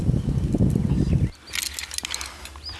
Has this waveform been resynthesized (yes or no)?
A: no